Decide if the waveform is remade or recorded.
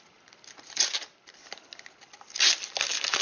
recorded